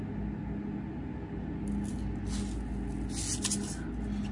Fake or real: real